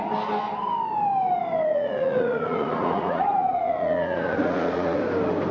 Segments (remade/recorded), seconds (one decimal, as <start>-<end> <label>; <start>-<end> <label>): 0.0-1.7 recorded; 1.7-5.0 remade; 5.0-5.5 recorded